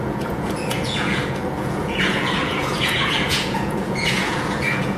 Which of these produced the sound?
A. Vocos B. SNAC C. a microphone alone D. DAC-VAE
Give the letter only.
A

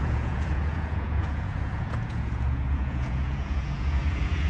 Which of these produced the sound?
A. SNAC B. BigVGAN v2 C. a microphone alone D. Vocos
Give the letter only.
D